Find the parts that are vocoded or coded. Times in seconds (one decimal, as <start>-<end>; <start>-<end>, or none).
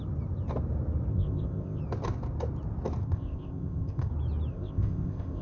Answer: 1.1-1.8; 3.0-4.1; 4.5-5.4